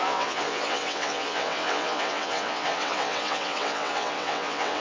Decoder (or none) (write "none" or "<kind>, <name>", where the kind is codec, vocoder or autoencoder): vocoder, WaveNeXt